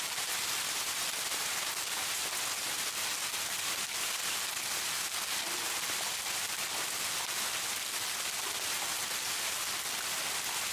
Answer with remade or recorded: recorded